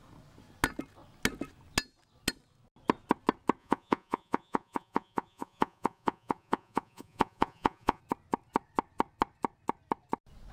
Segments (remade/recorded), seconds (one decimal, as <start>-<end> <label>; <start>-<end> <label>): 0.0-3.6 recorded; 3.6-8.0 remade; 8.0-10.5 recorded